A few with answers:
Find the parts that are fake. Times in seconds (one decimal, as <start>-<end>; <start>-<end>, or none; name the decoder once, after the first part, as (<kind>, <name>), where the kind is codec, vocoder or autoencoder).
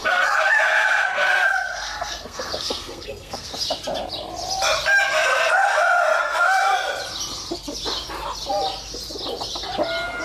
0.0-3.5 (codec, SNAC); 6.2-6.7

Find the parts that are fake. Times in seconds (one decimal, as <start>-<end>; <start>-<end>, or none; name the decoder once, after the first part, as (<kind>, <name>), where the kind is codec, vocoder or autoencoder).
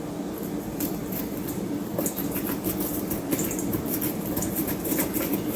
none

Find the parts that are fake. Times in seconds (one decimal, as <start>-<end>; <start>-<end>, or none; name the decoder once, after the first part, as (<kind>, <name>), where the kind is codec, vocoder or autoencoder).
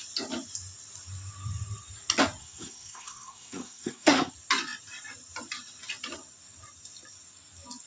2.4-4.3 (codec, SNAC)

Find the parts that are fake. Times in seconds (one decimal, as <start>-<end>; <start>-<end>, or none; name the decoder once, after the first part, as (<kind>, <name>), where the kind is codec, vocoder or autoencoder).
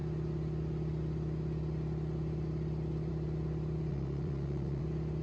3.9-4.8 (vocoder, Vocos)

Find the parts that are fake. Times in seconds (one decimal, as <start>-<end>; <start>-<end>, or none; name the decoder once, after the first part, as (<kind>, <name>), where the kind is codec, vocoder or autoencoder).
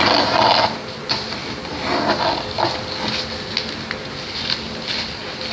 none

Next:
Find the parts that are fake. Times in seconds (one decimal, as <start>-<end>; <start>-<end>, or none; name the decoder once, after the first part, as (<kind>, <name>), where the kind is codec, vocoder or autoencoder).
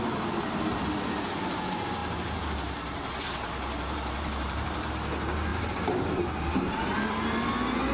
2.0-4.9 (vocoder, BigVGAN v2); 5.5-6.9